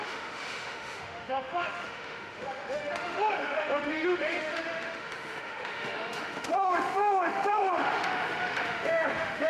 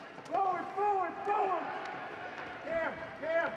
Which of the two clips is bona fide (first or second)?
second